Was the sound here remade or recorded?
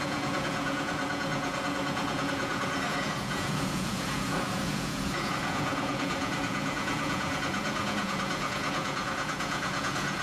remade